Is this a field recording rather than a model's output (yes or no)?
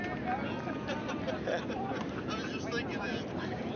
yes